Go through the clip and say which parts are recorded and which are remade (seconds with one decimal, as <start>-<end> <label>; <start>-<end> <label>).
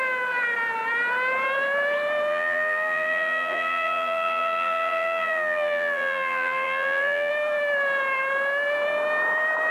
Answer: 0.0-2.3 recorded; 2.3-7.3 remade; 7.3-9.7 recorded